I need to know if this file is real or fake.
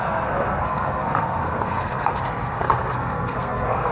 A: fake